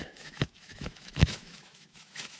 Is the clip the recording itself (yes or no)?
no